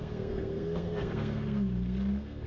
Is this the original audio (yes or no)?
no